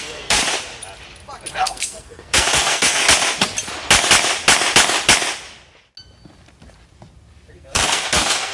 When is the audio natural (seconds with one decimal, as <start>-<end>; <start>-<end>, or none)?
0.4-1.5; 3.0-7.5